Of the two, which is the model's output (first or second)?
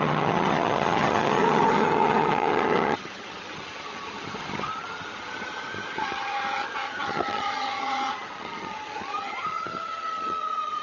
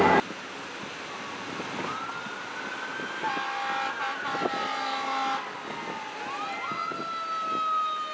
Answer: first